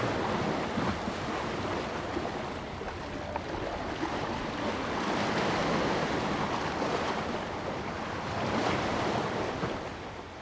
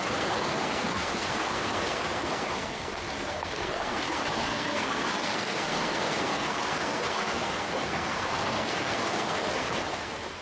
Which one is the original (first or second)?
first